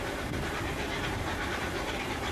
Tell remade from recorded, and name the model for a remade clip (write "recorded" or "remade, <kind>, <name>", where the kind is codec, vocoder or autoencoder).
remade, vocoder, BigVGAN v2